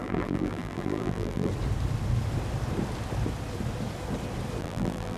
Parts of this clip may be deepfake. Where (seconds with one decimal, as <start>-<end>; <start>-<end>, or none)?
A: 0.0-1.5; 4.6-5.2